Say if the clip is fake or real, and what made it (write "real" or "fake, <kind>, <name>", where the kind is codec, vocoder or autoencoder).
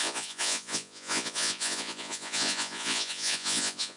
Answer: fake, vocoder, Vocos